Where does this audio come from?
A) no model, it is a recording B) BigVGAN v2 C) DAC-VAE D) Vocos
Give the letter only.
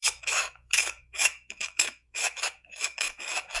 C